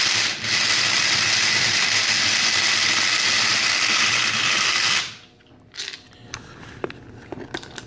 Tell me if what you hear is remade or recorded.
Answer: recorded